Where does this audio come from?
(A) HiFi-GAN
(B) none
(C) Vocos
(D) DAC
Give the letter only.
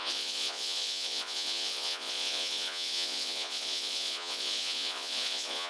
C